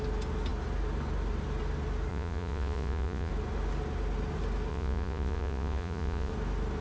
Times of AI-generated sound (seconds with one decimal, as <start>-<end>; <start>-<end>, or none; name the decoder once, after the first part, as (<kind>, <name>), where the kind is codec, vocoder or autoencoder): 2.1-3.3 (vocoder, Vocos); 4.7-6.3